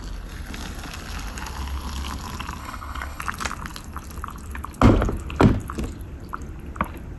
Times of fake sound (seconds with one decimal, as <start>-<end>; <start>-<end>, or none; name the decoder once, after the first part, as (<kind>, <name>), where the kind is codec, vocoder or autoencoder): 2.6-3.2 (codec, HILCodec)